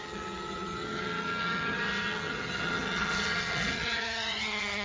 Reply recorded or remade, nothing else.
remade